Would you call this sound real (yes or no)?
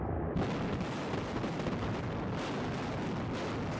yes